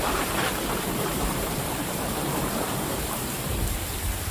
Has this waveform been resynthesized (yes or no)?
yes